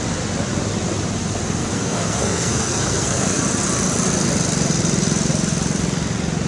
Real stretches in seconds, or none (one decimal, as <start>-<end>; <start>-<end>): 0.0-1.6; 3.4-6.5

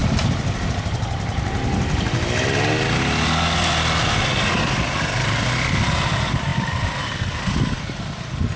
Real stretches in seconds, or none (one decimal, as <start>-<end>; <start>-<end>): 0.0-8.6

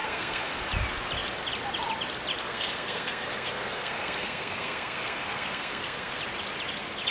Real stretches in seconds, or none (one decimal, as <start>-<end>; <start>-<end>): 0.6-2.4; 6.2-7.1

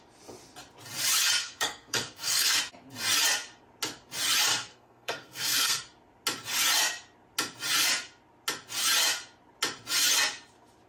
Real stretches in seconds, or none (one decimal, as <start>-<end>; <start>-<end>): 0.0-1.4; 2.6-4.5; 5.8-10.9

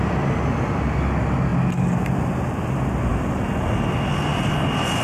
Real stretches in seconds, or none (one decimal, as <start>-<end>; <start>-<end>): 0.0-5.0

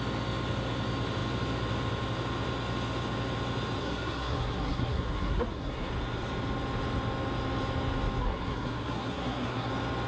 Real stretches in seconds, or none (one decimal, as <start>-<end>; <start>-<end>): 0.0-3.8; 5.9-8.2; 9.7-10.1